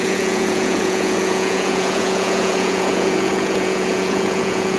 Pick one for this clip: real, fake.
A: fake